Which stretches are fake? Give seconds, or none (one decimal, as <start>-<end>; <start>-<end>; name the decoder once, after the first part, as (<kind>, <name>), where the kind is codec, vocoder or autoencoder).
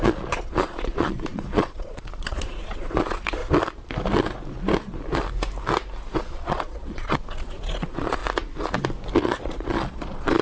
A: 0.0-3.4 (vocoder, Vocos); 6.2-8.2; 9.2-10.4